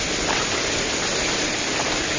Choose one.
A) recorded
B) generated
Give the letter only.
A